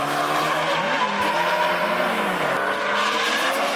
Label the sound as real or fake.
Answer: real